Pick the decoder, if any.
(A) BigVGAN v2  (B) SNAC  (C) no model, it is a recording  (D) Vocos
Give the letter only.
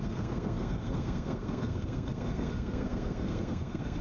B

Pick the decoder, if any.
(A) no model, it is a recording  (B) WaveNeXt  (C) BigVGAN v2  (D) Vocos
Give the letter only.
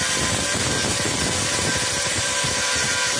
A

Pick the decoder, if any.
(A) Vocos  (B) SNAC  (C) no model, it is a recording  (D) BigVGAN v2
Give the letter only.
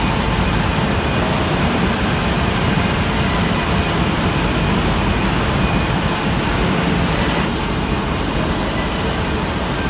C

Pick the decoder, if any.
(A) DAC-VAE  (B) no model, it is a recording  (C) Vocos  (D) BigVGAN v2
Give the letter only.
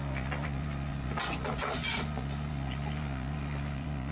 C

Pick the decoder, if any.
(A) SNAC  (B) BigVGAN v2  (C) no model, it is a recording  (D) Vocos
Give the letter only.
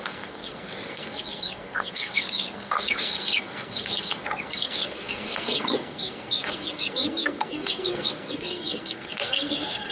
A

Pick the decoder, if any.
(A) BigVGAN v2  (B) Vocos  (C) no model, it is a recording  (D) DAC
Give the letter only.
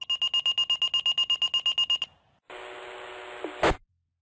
C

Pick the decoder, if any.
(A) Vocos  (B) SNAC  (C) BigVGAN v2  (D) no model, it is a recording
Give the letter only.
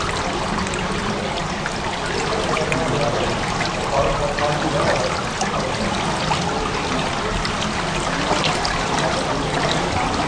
D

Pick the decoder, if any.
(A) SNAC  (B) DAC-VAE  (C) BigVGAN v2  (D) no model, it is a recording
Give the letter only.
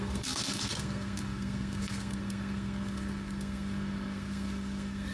A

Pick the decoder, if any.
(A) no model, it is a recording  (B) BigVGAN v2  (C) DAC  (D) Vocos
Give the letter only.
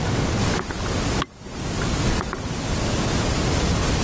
A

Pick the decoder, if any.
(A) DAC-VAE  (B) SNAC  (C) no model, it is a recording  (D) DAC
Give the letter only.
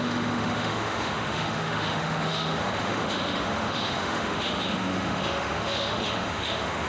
A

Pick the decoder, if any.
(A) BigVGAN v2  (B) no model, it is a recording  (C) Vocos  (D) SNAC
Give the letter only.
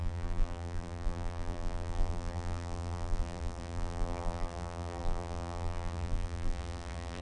A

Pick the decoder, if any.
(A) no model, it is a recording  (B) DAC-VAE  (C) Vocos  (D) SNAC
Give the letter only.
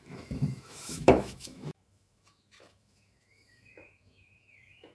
B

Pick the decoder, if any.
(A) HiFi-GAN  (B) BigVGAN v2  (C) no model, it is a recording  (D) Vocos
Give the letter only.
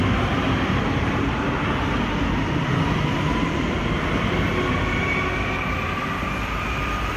C